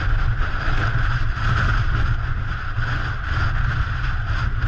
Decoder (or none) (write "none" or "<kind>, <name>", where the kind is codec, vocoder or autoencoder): none